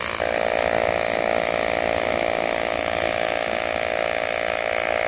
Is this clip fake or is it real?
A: real